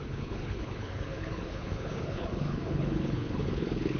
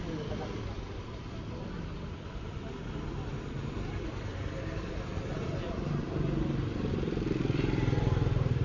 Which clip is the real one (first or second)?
second